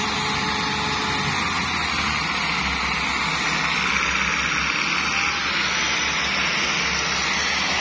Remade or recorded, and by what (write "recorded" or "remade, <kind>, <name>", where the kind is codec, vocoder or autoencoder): recorded